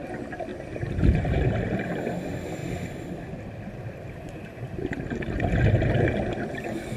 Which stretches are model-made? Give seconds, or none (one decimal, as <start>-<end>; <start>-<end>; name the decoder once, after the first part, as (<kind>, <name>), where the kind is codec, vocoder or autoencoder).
0.5-1.9 (vocoder, BigVGAN v2)